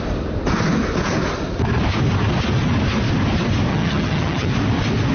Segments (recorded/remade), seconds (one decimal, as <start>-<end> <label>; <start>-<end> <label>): 0.0-3.7 recorded; 3.7-4.5 remade; 4.5-5.1 recorded